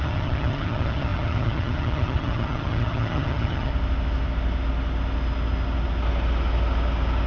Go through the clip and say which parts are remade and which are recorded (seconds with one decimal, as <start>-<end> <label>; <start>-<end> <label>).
0.0-3.7 remade; 3.7-7.3 recorded